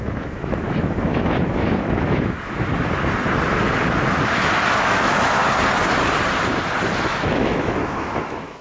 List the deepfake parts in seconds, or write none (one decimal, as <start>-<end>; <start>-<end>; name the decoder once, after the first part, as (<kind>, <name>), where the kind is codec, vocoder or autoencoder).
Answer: 0.0-2.7 (autoencoder, DAC-VAE); 4.7-5.4; 7.1-8.6